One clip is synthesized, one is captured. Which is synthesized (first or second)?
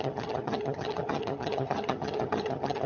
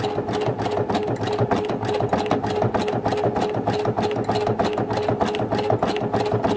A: first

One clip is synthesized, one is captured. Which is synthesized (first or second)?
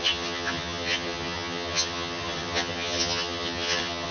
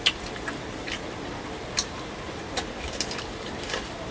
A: first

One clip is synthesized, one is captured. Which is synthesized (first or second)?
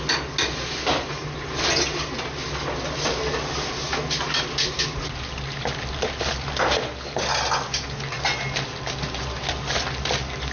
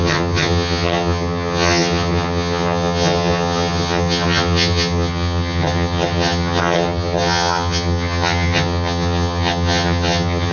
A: second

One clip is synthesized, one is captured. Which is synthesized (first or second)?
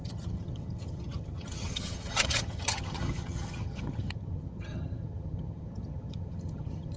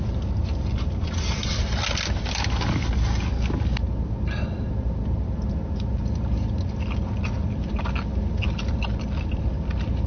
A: first